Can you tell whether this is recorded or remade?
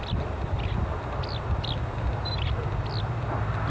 recorded